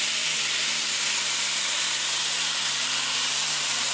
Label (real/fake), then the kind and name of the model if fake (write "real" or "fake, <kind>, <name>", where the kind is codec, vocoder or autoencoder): real